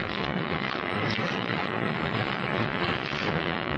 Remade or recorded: remade